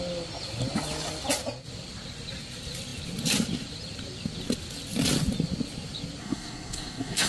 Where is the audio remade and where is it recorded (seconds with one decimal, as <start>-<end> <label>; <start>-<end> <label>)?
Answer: 0.0-6.2 recorded; 6.2-7.3 remade